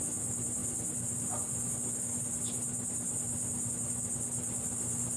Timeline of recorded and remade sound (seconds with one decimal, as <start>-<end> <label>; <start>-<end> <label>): 0.0-5.2 recorded